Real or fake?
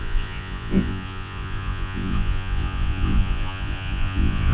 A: fake